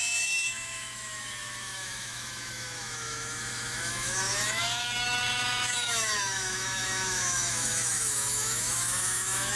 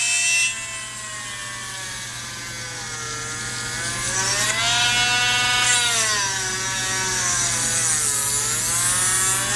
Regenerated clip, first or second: first